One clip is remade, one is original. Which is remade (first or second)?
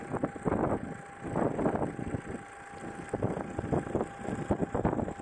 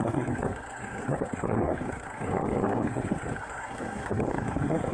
second